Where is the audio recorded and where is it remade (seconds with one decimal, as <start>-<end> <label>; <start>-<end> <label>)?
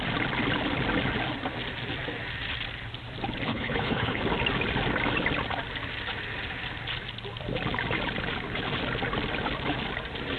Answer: 0.0-3.5 recorded; 3.5-4.2 remade; 4.2-10.4 recorded